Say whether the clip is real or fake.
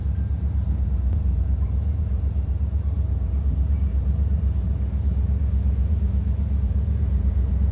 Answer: fake